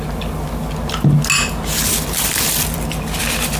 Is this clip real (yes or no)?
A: yes